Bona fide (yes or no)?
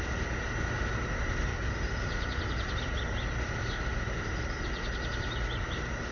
yes